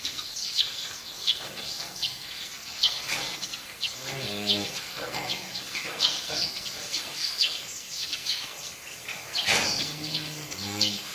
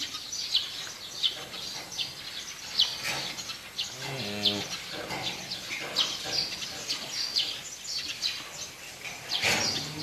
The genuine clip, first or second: second